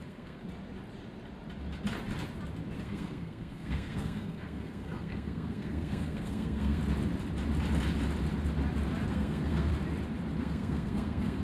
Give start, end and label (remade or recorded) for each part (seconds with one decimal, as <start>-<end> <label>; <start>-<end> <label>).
0.0-0.4 remade; 0.4-2.8 recorded; 2.8-6.8 remade; 6.8-9.1 recorded; 9.1-9.7 remade; 9.7-10.4 recorded; 10.4-11.4 remade